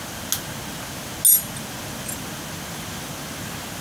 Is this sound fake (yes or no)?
no